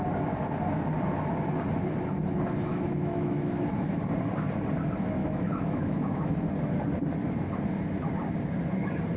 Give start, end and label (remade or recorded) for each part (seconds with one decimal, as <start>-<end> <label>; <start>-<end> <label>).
0.0-2.7 recorded; 2.7-4.0 remade; 4.0-5.2 recorded; 5.2-6.3 remade; 6.3-9.2 recorded